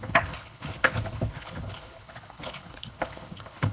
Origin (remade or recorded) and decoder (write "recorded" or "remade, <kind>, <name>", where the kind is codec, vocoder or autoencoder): remade, codec, HILCodec